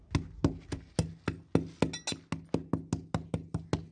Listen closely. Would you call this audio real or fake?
real